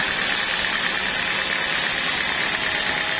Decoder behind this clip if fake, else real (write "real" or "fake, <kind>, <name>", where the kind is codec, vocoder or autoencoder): real